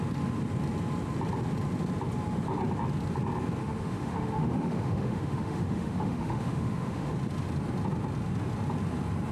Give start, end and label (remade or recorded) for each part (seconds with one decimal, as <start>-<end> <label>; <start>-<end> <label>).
0.0-3.6 recorded; 3.6-7.1 remade; 7.1-9.3 recorded